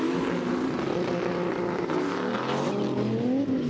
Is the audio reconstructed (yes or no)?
no